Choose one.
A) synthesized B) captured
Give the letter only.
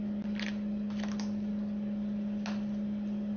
B